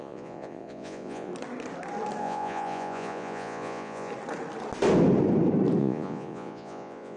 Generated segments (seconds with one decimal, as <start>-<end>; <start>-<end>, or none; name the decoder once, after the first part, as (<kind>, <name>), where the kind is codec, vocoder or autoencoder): 0.0-1.3 (vocoder, Vocos); 2.2-4.1; 5.8-7.2